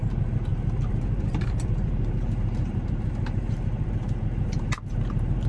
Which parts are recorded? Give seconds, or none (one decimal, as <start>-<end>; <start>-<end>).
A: none